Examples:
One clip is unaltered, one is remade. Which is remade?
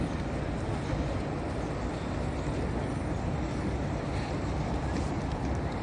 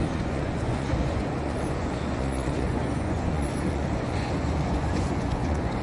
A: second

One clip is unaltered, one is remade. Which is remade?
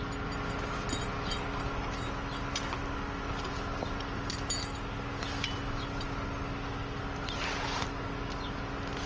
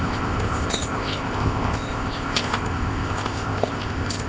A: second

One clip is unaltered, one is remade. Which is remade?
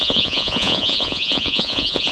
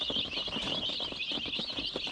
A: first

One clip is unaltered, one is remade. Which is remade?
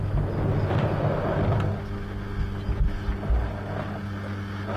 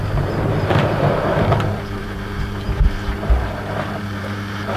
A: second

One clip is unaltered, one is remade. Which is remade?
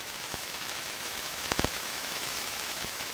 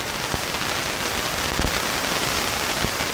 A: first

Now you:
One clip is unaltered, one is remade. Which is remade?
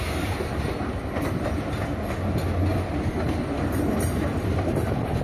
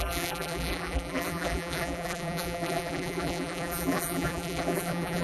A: second